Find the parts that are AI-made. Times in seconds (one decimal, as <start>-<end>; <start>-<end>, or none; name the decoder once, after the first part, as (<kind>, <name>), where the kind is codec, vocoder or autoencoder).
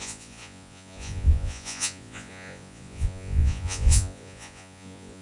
0.0-5.2 (vocoder, Vocos)